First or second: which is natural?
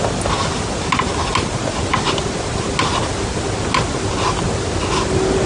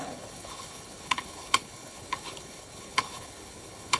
first